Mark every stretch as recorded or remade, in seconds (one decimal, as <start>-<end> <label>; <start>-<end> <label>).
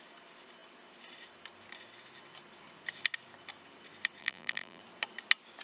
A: 0.0-4.2 recorded; 4.2-4.8 remade; 4.8-5.6 recorded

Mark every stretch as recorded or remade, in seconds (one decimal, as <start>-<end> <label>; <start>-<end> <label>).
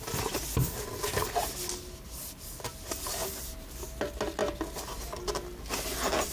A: 0.0-6.3 recorded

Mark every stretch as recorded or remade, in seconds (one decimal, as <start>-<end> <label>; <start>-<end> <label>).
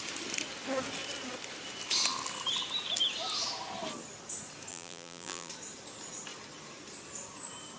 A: 0.0-4.7 recorded; 4.7-5.5 remade; 5.5-7.8 recorded